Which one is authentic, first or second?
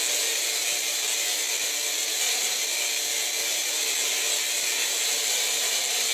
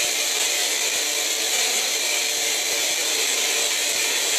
first